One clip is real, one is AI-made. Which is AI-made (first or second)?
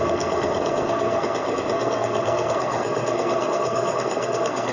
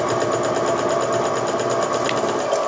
first